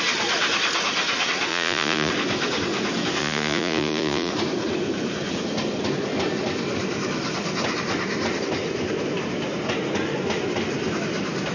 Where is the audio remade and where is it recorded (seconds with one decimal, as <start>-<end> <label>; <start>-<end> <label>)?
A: 0.0-1.5 recorded; 1.5-2.1 remade; 2.1-3.2 recorded; 3.2-4.3 remade; 4.3-11.5 recorded